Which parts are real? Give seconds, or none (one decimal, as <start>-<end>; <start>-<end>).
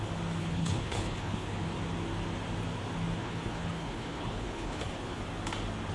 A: 0.0-0.4; 1.8-3.2; 5.2-5.9